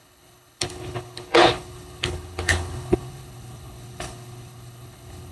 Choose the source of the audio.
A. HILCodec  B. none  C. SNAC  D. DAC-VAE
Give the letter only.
A